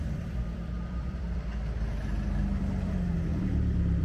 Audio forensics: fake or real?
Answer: fake